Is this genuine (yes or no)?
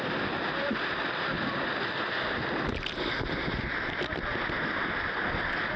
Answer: yes